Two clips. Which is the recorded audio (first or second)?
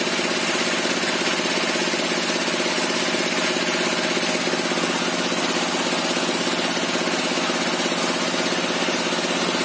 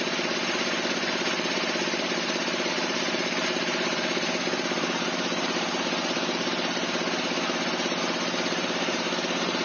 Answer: first